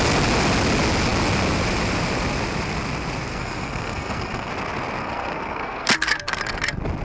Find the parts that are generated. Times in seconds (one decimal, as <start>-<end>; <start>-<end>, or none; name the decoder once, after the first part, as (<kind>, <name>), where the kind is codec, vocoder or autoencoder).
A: 3.3-4.5 (codec, SNAC); 5.0-6.4